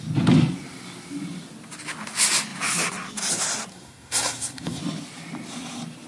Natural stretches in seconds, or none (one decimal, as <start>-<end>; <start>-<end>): 0.0-3.7; 4.8-6.1